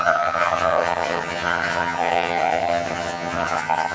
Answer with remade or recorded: remade